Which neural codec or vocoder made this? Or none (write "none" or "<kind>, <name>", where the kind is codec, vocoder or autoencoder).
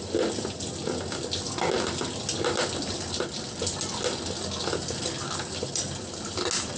none